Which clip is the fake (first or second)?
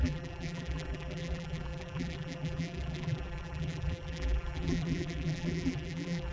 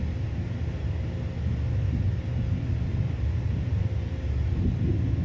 first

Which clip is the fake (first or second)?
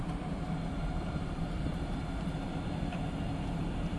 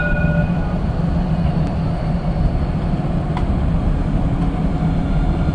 first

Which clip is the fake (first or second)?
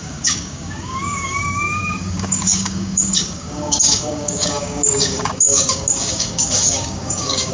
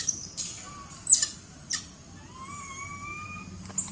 first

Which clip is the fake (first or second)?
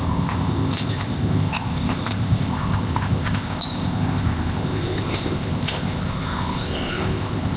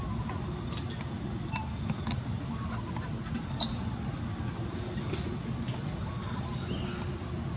first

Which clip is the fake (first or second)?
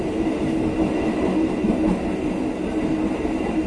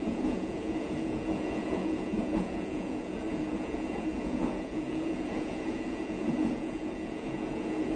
second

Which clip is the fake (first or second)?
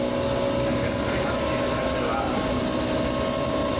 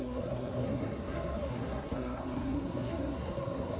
second